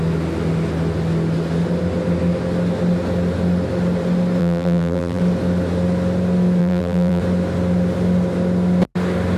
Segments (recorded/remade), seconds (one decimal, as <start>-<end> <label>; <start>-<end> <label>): 0.0-4.4 recorded; 4.4-5.2 remade; 5.2-6.6 recorded; 6.6-7.2 remade; 7.2-9.4 recorded